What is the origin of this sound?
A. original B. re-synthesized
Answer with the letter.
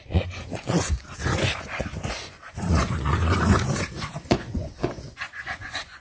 B